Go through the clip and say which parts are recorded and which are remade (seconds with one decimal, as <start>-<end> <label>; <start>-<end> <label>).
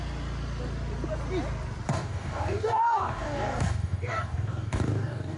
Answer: 0.0-1.9 recorded; 1.9-5.4 remade